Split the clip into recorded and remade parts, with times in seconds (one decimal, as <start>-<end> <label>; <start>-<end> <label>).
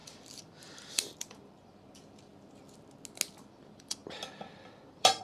0.0-2.3 remade; 2.3-3.4 recorded; 3.4-5.2 remade